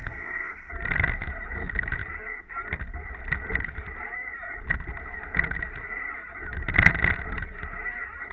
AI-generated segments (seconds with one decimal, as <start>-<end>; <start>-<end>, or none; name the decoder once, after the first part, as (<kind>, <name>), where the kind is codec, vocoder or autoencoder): 0.0-0.7 (codec, SNAC)